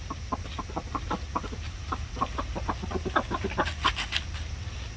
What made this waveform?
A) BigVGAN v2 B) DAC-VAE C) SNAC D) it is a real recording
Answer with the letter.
D